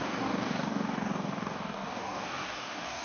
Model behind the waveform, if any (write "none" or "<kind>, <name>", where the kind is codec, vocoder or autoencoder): codec, DAC